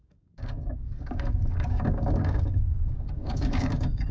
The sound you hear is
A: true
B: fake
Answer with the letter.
B